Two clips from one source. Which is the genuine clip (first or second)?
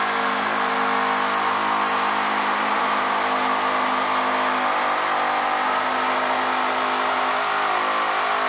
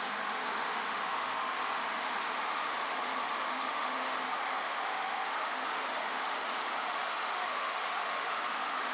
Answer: first